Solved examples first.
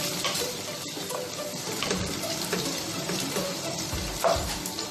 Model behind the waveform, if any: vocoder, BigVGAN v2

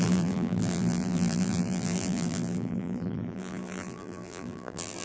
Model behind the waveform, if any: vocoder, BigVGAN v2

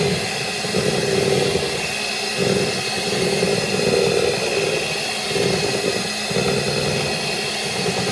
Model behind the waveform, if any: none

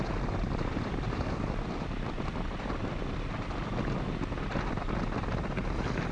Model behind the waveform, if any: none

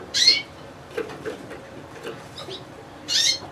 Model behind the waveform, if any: vocoder, BigVGAN v2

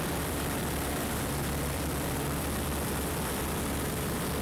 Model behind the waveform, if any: vocoder, BigVGAN v2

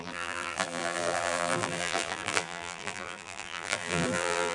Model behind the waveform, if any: vocoder, BigVGAN v2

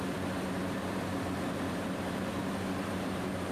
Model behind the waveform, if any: vocoder, BigVGAN v2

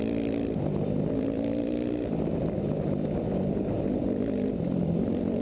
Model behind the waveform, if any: vocoder, BigVGAN v2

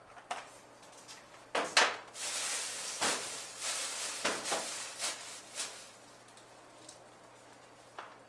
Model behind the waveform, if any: none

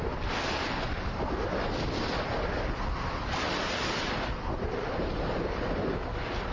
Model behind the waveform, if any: none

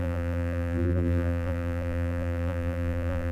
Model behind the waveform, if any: vocoder, BigVGAN v2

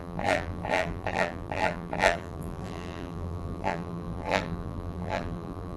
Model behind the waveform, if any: vocoder, BigVGAN v2